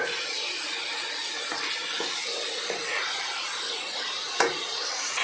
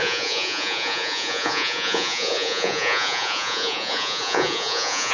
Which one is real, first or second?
first